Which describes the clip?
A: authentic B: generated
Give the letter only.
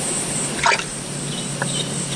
A